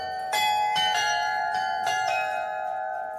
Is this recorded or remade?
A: remade